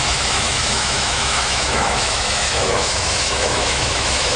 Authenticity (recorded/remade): remade